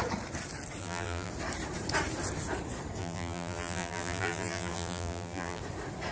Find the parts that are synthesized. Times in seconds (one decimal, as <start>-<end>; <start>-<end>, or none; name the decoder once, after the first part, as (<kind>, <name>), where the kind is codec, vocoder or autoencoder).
0.8-1.3 (vocoder, BigVGAN v2); 3.0-5.6